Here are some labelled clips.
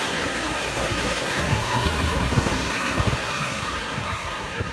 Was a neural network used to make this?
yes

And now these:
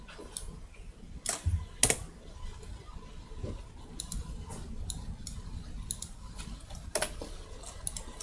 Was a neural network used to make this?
no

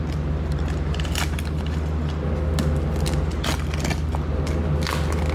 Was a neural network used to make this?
no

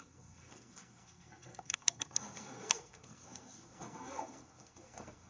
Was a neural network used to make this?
yes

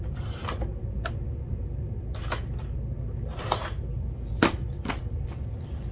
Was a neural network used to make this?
no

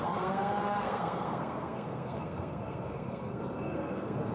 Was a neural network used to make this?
yes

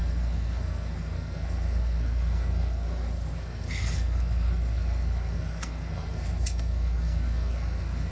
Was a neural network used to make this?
yes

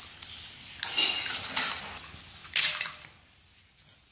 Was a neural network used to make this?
no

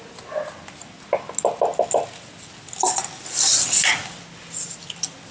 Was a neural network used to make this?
no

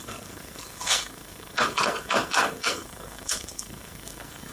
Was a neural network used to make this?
yes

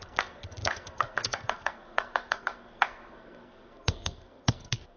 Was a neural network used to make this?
yes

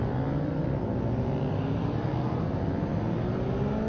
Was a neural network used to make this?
no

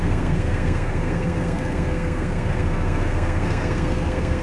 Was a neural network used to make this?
yes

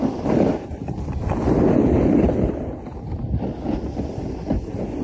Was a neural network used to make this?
no